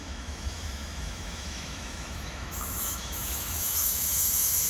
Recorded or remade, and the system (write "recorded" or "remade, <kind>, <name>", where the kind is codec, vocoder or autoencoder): remade, autoencoder, DAC-VAE